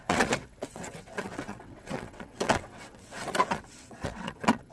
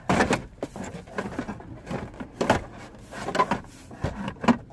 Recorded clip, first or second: second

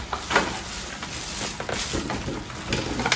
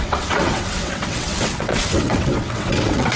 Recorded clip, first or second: first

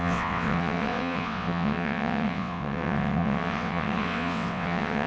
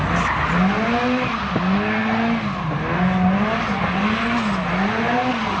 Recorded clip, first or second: second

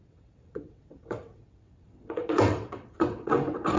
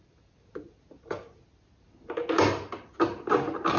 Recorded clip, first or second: second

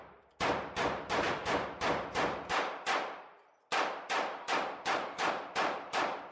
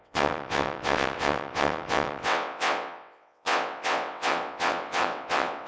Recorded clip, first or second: first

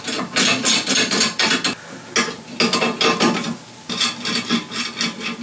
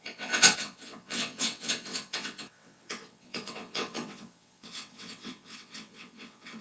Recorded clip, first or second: first